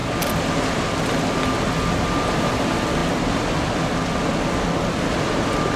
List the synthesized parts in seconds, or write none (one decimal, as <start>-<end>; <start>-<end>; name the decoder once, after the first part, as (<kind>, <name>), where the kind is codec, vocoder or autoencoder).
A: none